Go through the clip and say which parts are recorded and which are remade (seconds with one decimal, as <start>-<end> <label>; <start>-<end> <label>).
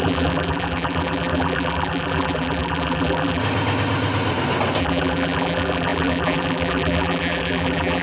0.0-3.4 remade; 3.4-4.8 recorded; 4.8-8.0 remade